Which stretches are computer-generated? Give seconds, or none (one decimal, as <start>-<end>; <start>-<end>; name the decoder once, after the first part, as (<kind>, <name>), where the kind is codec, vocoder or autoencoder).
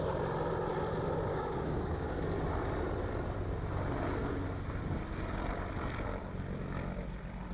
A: 1.3-2.1 (codec, DAC)